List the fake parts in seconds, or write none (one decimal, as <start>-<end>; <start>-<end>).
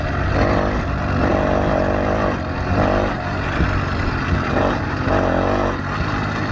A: none